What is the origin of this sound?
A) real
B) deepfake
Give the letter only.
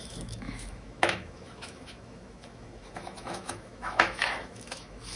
B